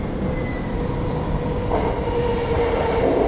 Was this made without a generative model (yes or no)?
yes